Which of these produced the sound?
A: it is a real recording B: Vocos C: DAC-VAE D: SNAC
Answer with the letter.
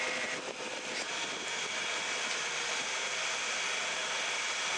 A